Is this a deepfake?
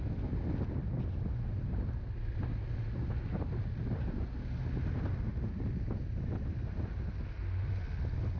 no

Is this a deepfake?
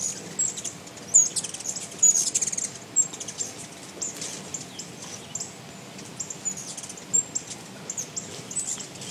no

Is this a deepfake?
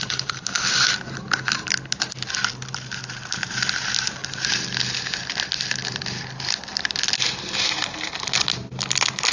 no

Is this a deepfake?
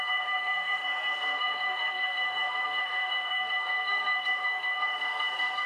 yes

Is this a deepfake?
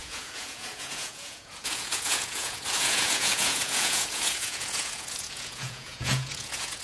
yes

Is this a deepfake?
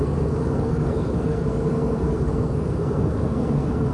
yes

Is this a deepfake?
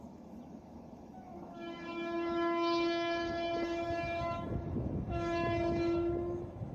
yes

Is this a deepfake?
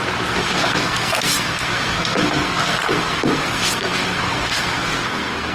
yes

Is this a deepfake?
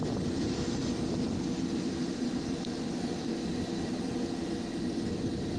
no